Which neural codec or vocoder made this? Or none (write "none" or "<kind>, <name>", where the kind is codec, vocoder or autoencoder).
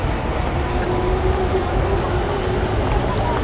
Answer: none